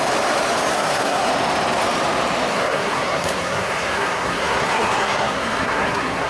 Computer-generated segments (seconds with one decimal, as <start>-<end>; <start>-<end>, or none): 0.7-1.3; 2.5-6.3